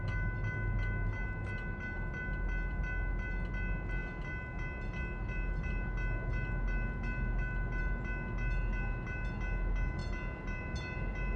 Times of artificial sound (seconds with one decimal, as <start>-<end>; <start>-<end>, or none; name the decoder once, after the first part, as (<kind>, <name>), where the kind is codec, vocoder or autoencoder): none